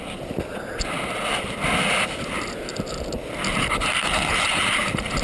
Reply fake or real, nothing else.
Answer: real